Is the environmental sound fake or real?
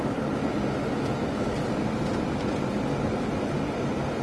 real